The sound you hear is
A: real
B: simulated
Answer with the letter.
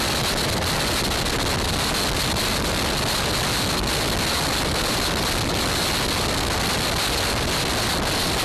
A